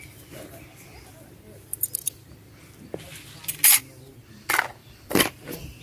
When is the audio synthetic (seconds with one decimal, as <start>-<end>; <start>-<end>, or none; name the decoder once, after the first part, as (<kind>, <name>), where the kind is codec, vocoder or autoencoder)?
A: 4.8-5.8 (vocoder, BigVGAN v2)